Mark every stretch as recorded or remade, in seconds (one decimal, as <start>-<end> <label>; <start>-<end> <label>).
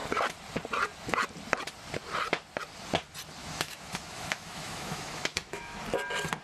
0.0-3.4 recorded; 3.4-5.8 remade; 5.8-6.4 recorded